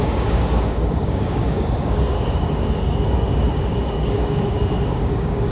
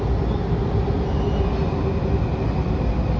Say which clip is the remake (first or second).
first